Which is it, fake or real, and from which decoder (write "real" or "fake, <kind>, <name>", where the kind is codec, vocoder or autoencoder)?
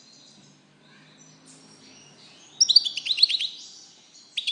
real